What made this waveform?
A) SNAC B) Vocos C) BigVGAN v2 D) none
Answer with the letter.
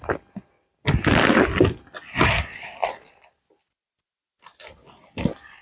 D